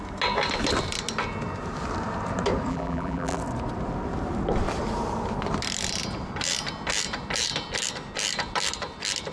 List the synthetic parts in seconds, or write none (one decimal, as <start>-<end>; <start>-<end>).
2.7-3.4